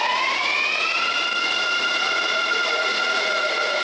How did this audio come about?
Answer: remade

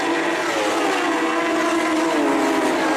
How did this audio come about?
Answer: recorded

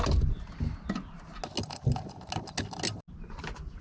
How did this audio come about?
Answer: recorded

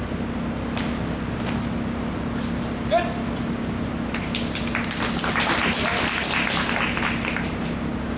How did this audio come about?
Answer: recorded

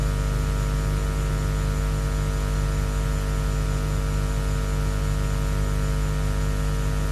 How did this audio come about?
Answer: recorded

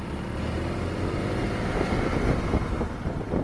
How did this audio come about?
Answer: recorded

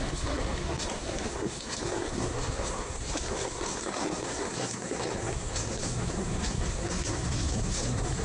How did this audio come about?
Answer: remade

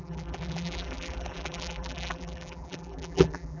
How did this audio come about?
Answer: remade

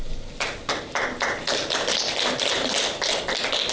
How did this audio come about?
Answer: recorded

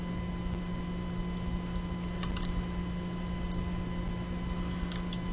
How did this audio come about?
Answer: recorded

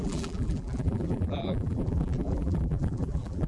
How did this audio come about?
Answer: remade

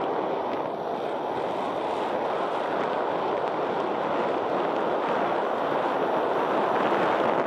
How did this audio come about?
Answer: recorded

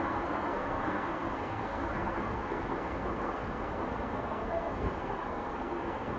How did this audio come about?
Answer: remade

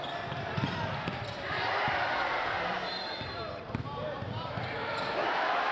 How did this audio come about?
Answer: remade